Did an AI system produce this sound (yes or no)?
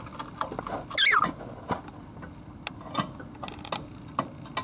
no